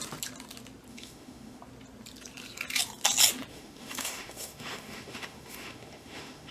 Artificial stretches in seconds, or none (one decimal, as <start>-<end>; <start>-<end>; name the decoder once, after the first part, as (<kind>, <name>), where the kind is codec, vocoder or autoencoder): 0.9-1.6 (autoencoder, DAC-VAE); 3.5-6.5